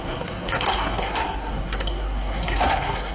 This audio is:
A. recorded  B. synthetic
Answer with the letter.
B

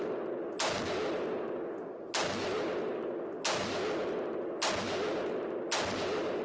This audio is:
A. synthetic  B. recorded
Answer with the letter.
B